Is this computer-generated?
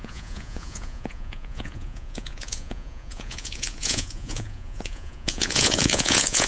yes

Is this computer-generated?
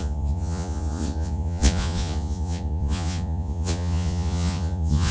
yes